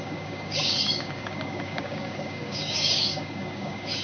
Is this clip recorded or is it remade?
remade